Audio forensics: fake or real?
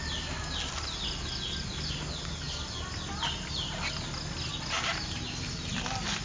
real